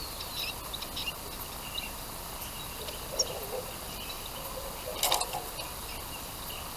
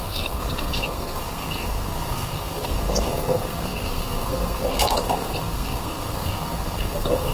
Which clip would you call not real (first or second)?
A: second